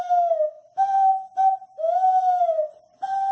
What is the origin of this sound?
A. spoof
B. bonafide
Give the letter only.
B